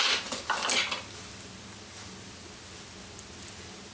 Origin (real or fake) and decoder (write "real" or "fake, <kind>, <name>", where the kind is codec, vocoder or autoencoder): real